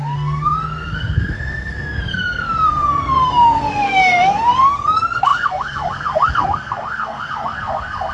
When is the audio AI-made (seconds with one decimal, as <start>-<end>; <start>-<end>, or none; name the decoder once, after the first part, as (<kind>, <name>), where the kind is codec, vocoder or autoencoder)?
0.0-8.1 (codec, SNAC)